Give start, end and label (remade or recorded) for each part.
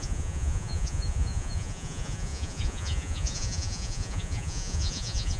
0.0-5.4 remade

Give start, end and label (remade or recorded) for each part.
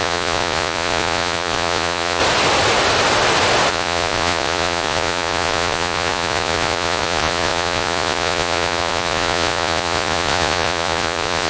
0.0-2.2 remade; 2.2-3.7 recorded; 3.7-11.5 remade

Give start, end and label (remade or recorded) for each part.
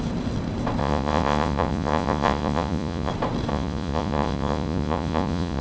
0.0-0.8 recorded; 0.8-3.1 remade; 3.1-3.5 recorded; 3.5-5.6 remade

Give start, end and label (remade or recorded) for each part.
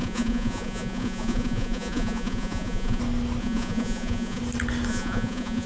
0.0-3.0 remade; 3.0-3.4 recorded; 3.4-4.4 remade; 4.4-4.9 recorded; 4.9-5.7 remade